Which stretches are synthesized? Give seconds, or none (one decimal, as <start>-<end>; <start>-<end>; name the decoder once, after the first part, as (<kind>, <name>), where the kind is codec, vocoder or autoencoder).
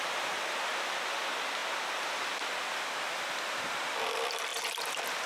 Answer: none